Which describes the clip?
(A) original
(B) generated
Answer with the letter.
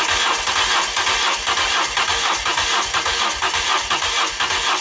A